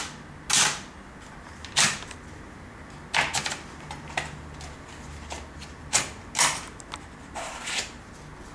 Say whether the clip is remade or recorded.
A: recorded